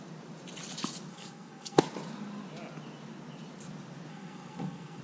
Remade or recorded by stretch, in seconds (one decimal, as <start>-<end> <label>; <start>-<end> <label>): 0.0-1.1 recorded; 1.1-1.8 remade; 1.8-4.1 recorded; 4.1-5.0 remade